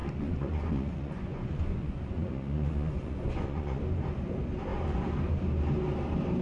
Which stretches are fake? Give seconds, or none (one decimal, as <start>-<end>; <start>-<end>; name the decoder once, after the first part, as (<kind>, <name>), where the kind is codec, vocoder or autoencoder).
0.0-3.8 (vocoder, Vocos)